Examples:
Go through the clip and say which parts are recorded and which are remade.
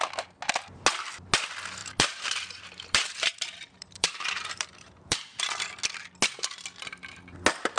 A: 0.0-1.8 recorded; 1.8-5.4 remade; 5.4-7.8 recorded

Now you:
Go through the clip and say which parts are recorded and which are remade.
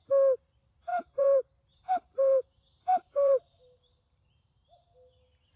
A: 0.0-0.9 recorded; 0.9-4.3 remade; 4.3-5.6 recorded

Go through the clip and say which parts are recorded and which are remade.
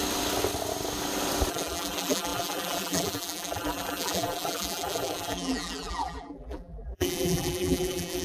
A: 0.0-1.5 recorded; 1.5-8.2 remade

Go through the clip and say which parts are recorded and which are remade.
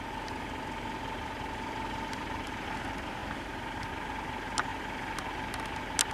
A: 0.0-3.2 recorded; 3.2-3.9 remade; 3.9-6.1 recorded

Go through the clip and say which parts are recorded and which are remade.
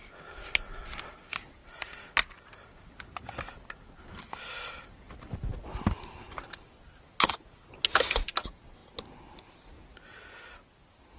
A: 0.0-11.2 recorded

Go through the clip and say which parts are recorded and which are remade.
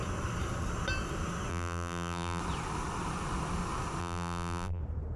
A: 0.0-1.5 recorded; 1.5-2.4 remade; 2.4-4.0 recorded; 4.0-4.8 remade; 4.8-5.2 recorded